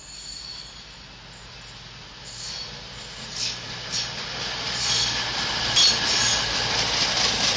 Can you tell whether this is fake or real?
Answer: real